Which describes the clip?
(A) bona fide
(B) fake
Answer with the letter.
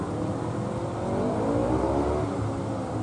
A